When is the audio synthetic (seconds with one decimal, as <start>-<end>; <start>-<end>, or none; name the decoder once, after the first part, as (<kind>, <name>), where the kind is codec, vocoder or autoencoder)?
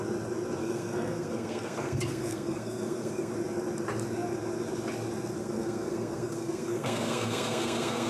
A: 0.6-3.3 (codec, SNAC); 5.4-8.1